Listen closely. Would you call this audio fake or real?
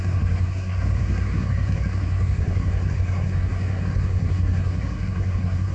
fake